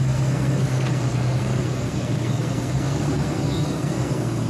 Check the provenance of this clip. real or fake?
fake